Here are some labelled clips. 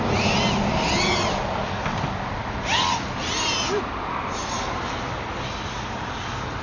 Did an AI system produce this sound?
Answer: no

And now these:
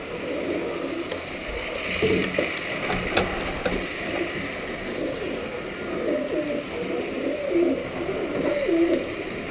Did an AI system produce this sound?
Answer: no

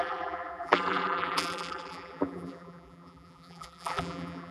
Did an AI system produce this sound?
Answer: yes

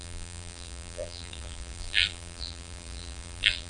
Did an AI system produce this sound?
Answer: yes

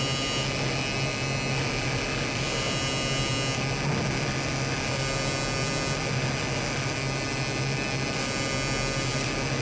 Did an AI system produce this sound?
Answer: no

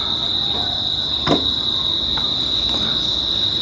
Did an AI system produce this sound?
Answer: no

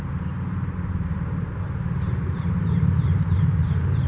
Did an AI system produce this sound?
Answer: yes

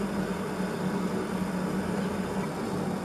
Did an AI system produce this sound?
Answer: no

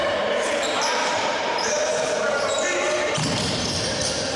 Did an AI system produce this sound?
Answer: yes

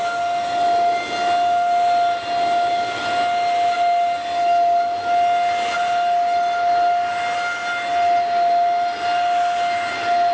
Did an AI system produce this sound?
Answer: no